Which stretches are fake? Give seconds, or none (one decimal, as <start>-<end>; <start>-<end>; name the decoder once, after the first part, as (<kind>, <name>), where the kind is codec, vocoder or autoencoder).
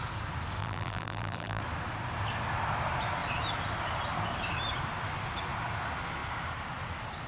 0.6-1.6 (vocoder, BigVGAN v2)